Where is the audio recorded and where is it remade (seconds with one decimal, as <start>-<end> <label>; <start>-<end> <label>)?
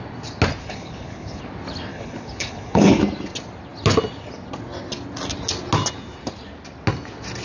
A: 0.0-0.6 recorded; 0.6-1.4 remade; 1.4-1.9 recorded; 1.9-3.0 remade; 3.0-7.4 recorded